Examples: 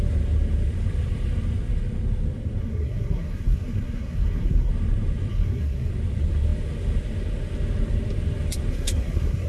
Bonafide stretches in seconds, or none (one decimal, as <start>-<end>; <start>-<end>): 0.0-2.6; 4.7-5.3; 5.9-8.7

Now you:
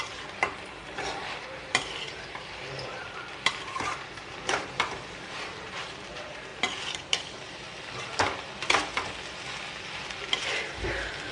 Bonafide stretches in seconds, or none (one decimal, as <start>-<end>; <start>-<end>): 6.5-11.3

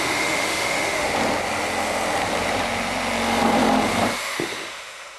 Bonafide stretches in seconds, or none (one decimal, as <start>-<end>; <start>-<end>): 1.1-4.2

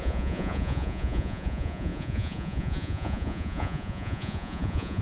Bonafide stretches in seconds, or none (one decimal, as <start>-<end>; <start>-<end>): none